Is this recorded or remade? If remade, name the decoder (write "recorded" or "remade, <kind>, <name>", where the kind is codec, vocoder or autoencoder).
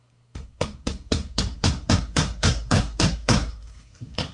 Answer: remade, codec, SNAC